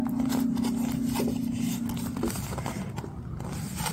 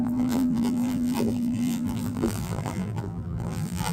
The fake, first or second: second